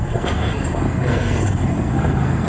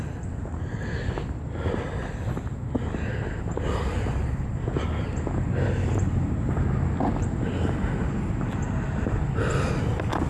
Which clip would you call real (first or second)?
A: second